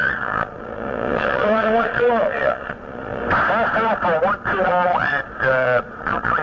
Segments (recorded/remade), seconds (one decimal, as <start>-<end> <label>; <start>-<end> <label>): 0.0-3.2 remade; 3.2-4.6 recorded; 4.6-6.4 remade